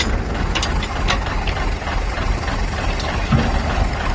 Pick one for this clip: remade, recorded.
recorded